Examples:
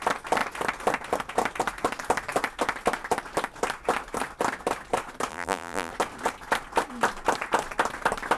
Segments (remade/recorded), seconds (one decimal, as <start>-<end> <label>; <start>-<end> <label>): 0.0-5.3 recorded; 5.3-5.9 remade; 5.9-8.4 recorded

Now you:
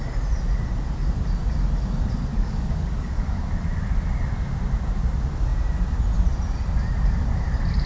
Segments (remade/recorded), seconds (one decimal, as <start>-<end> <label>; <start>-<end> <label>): 0.0-2.3 recorded; 2.3-3.5 remade; 3.5-7.9 recorded

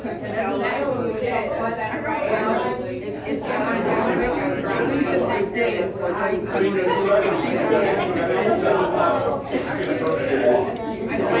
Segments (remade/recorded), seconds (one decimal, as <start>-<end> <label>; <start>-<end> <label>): 0.0-9.2 recorded; 9.2-9.7 remade; 9.7-11.4 recorded